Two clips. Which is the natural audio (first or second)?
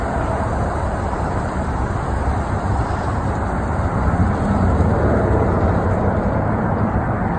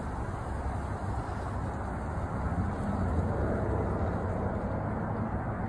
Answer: second